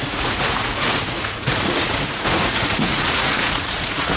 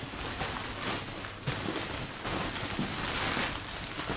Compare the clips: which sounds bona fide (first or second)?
second